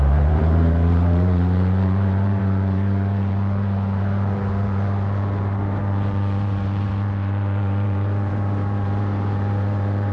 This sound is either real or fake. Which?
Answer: fake